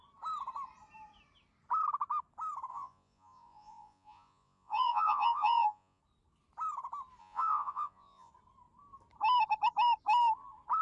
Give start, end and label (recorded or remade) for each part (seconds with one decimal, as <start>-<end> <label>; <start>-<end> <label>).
0.0-2.7 recorded; 2.7-6.0 remade; 6.0-7.2 recorded; 7.2-8.3 remade; 8.3-10.8 recorded